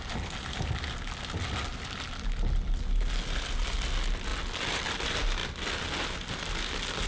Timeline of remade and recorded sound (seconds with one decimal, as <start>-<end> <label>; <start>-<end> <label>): 0.0-7.1 recorded